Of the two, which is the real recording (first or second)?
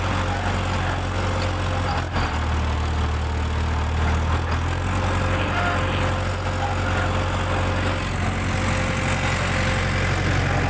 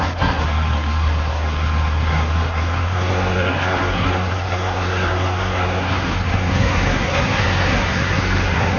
first